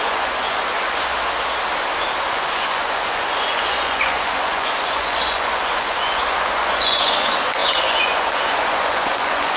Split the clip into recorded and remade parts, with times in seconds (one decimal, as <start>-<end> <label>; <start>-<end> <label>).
0.0-1.1 remade; 1.1-2.2 recorded; 2.2-9.6 remade